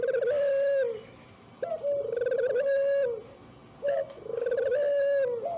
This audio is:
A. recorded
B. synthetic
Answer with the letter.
A